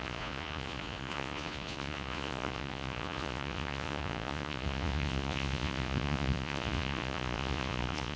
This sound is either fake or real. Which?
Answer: fake